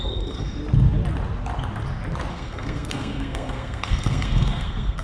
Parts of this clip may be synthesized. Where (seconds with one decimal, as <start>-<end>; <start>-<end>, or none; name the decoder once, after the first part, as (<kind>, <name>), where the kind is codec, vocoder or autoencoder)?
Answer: 0.0-0.6 (codec, SNAC); 2.3-5.0